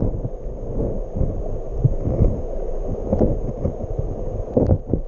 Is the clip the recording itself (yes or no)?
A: yes